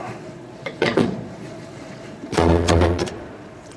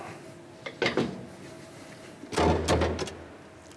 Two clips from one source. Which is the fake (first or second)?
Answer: first